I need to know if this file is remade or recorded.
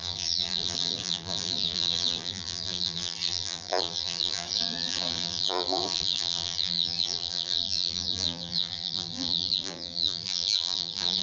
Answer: remade